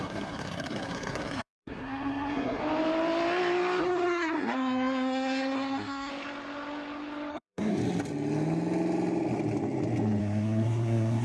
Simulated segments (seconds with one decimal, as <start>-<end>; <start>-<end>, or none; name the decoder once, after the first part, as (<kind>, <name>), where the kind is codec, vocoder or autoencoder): 0.0-2.6 (codec, SNAC); 3.8-6.1; 7.3-7.8; 10.2-11.2